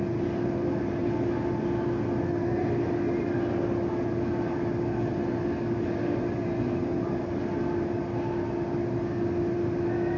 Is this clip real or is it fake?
real